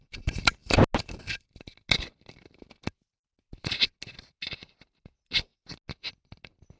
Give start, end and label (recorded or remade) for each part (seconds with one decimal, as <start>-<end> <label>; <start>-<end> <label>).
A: 0.0-6.8 recorded